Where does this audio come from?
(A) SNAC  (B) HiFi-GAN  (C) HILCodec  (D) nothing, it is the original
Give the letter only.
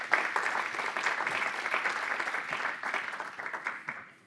D